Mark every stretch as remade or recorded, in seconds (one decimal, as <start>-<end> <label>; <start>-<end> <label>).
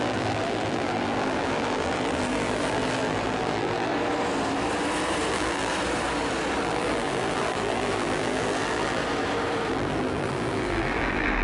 0.0-3.9 remade; 3.9-5.3 recorded; 5.3-5.7 remade; 5.7-6.6 recorded; 6.6-9.0 remade; 9.0-9.7 recorded; 9.7-11.4 remade